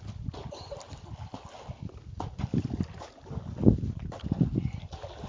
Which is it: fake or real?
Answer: real